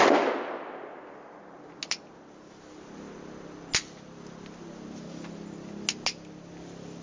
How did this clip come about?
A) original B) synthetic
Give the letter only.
A